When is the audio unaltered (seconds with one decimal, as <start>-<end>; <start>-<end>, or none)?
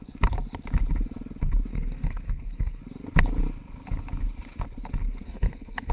0.0-1.7; 2.8-5.0